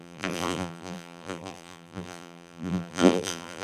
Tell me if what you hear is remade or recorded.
remade